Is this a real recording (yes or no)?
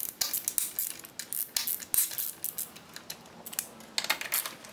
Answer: yes